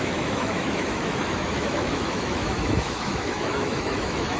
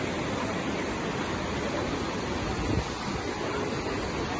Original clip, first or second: second